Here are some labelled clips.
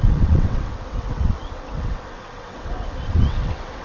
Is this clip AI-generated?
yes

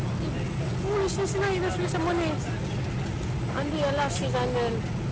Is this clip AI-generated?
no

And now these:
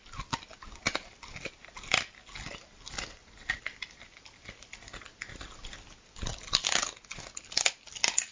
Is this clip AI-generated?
no